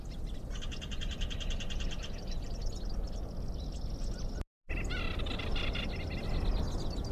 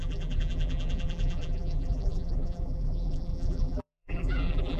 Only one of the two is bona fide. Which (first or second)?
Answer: first